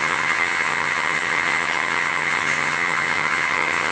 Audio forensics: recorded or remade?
remade